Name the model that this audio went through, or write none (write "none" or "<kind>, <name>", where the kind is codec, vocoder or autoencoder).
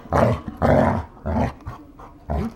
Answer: none